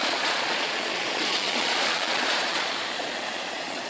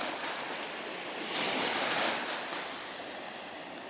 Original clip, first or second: second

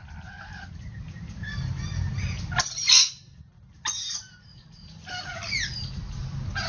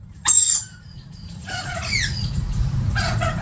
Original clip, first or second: first